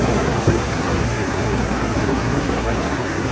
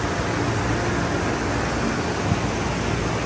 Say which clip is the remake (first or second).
first